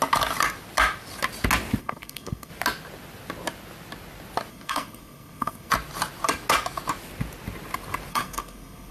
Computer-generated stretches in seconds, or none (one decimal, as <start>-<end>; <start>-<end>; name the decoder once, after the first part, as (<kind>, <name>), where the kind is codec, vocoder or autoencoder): 1.8-2.5 (codec, SNAC); 4.5-5.7; 8.1-8.9